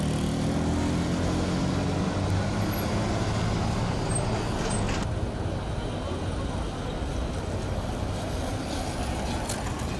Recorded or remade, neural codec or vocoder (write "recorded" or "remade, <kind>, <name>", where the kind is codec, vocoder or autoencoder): recorded